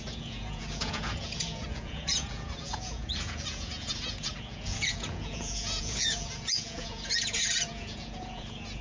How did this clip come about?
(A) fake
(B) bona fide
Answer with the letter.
A